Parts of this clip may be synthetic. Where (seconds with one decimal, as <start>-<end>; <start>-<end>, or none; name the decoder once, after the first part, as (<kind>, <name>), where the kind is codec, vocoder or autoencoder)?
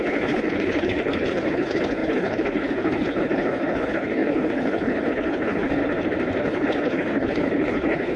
0.0-5.8 (codec, HILCodec); 6.4-8.2